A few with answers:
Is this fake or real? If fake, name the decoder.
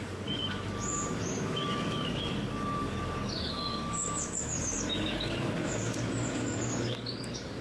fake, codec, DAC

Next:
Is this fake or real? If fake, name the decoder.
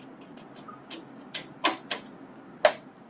real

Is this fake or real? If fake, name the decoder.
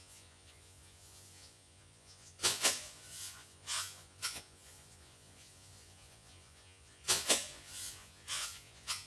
fake, vocoder, Vocos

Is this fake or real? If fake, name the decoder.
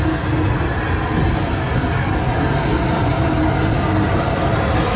real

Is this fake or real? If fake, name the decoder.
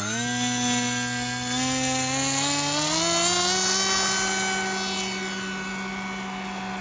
real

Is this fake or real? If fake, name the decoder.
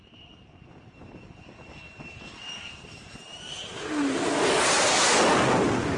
real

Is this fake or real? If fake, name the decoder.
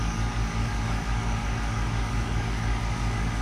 fake, codec, DAC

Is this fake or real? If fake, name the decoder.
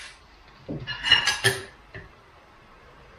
fake, vocoder, BigVGAN v2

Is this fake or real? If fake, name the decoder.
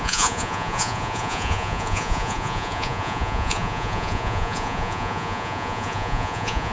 fake, vocoder, Vocos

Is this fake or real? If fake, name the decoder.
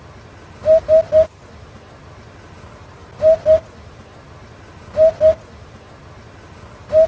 real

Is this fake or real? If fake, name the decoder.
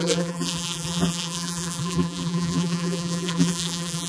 fake, vocoder, BigVGAN v2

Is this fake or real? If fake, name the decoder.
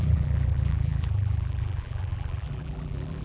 fake, vocoder, BigVGAN v2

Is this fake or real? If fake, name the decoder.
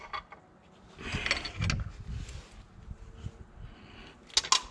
real